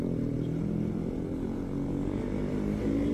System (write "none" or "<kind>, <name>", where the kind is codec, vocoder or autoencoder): none